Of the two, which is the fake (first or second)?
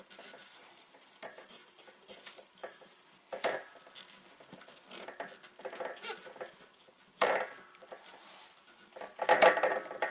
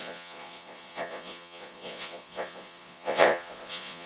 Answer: second